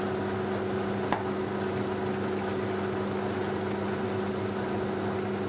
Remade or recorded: recorded